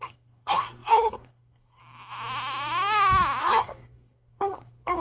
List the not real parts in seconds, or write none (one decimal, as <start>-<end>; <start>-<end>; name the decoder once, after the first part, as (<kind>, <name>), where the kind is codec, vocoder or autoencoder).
0.0-1.8 (codec, SNAC); 3.4-5.0

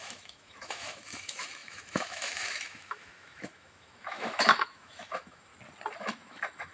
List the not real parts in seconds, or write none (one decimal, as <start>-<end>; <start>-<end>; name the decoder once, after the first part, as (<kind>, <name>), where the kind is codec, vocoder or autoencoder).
0.0-5.5 (autoencoder, DAC-VAE); 6.0-6.7